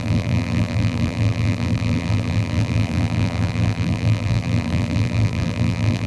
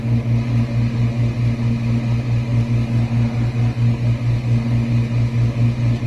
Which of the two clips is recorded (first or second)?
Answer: second